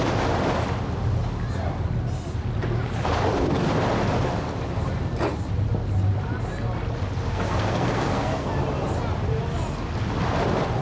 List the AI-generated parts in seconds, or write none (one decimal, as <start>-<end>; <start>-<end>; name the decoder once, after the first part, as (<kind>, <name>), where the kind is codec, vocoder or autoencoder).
7.3-8.5 (codec, SNAC)